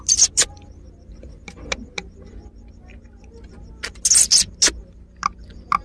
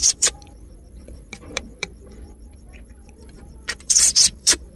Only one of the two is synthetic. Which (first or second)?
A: second